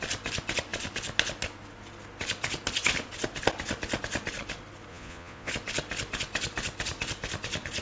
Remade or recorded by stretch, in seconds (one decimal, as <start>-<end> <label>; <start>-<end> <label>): 0.0-4.9 recorded; 4.9-5.5 remade; 5.5-7.8 recorded